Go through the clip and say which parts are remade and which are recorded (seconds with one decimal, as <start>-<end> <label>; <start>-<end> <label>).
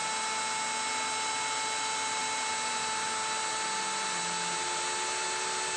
0.0-5.8 recorded